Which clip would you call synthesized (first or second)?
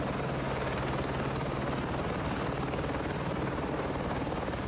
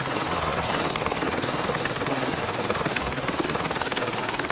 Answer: second